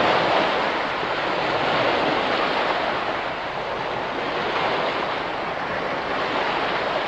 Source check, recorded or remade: recorded